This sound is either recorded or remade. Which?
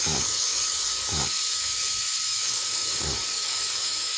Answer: remade